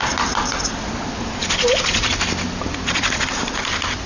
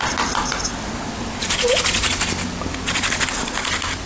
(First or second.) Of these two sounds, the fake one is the first